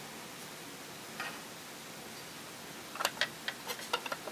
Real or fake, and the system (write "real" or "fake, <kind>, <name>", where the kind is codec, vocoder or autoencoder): real